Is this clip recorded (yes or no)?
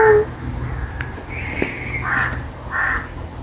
yes